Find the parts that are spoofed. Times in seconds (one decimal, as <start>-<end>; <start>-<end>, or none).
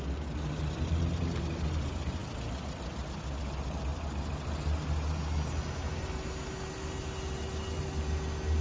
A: none